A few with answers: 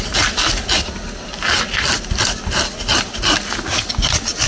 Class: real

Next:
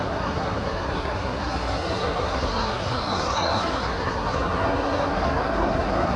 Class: fake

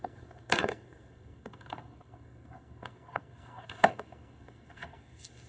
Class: fake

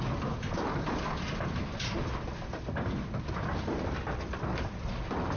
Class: real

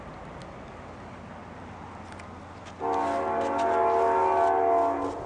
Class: real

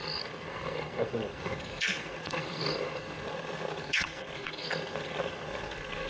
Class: fake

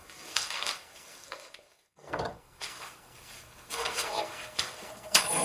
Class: fake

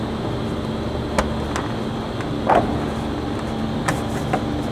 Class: real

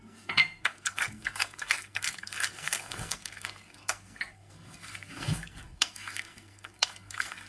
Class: fake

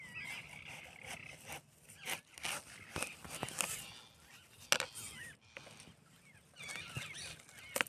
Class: real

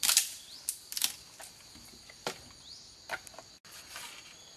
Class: real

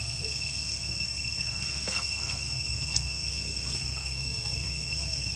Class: fake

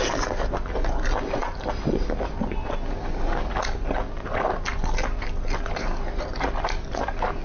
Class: real